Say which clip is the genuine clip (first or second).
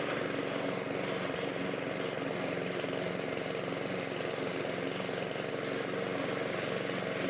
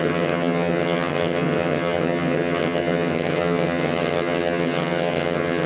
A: first